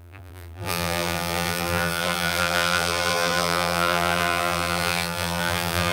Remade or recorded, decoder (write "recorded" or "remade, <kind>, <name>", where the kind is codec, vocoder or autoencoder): remade, vocoder, BigVGAN v2